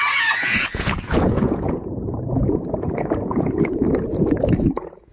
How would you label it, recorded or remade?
remade